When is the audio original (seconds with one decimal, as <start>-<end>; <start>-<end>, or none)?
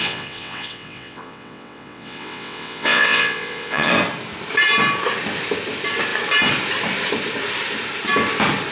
3.9-8.7